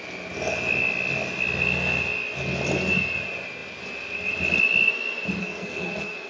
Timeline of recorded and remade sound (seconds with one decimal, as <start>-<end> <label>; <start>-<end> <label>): 0.0-5.4 recorded; 5.4-6.3 remade